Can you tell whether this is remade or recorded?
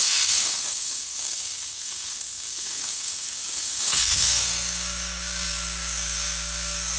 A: remade